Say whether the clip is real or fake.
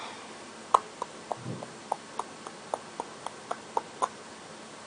real